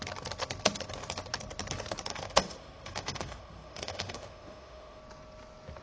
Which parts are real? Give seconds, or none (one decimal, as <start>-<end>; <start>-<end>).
0.0-2.1; 5.0-5.8

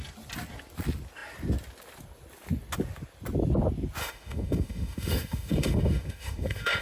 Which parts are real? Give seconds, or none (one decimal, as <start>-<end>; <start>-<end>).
0.0-4.0

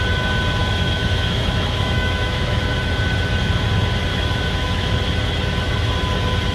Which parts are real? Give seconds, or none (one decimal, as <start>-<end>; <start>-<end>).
0.0-0.6; 2.6-4.1; 4.9-6.5

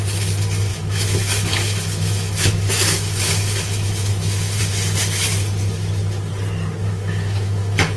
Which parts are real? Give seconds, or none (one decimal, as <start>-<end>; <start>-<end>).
0.0-0.7; 4.6-6.8

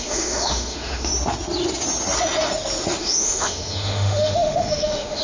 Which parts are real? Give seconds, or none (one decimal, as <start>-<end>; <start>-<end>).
1.1-3.0